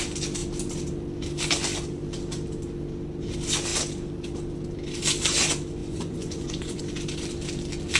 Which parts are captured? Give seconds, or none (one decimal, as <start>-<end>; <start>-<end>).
0.0-5.8; 6.8-8.0

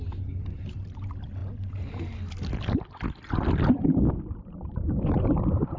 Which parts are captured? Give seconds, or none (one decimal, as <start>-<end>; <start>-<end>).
0.0-5.8

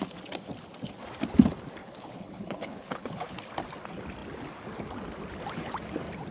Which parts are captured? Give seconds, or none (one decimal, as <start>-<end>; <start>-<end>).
0.0-1.8; 3.4-6.3

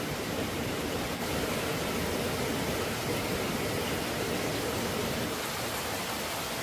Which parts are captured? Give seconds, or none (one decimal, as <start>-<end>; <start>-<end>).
1.7-5.6; 6.0-6.6